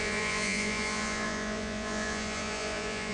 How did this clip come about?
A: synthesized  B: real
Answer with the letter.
A